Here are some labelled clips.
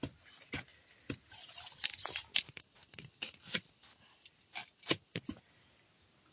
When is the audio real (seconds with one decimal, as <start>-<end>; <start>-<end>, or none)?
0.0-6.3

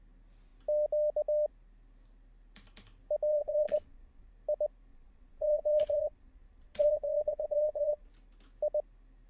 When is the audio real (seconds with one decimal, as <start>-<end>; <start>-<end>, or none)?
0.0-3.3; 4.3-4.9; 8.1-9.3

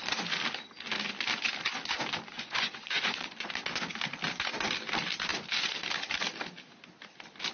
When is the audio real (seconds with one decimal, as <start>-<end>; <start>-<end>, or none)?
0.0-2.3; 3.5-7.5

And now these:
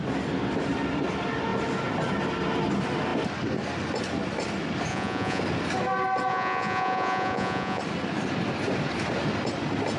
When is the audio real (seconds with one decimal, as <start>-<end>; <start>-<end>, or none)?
0.0-4.9; 5.4-6.3; 7.8-10.0

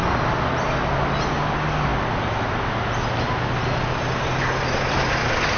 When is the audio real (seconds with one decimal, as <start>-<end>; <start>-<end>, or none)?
0.0-5.6

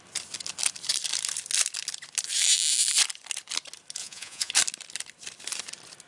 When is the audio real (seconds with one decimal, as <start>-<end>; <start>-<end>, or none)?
0.0-4.0; 4.5-6.1